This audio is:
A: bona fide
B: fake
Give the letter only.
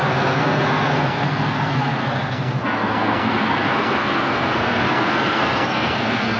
B